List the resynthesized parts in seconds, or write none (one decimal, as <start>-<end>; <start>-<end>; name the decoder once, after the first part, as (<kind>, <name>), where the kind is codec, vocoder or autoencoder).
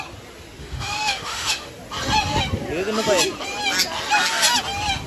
0.6-1.7 (autoencoder, DAC-VAE)